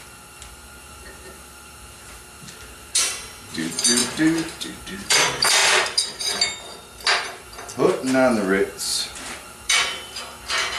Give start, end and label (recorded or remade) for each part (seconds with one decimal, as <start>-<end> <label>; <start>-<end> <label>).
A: 0.0-0.8 recorded; 0.8-3.6 remade; 3.6-4.0 recorded; 4.0-5.1 remade; 5.1-5.6 recorded; 5.6-6.2 remade; 6.2-8.9 recorded; 8.9-10.2 remade; 10.2-10.8 recorded